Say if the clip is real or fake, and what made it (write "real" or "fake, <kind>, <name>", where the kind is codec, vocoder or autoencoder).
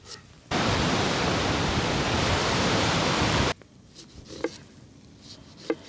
real